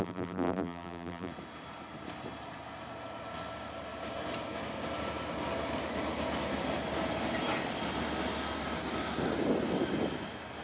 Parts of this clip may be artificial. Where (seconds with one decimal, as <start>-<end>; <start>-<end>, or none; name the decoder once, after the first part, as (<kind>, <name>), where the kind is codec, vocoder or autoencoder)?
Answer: 0.0-1.3 (vocoder, BigVGAN v2)